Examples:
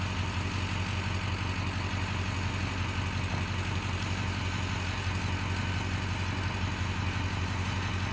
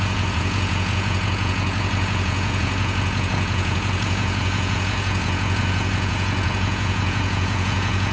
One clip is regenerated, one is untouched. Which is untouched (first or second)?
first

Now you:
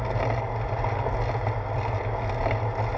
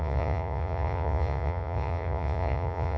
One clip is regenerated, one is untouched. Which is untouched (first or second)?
first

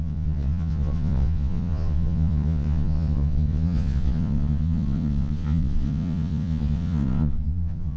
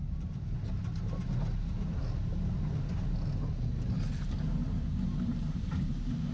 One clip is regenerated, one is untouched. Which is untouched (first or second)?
second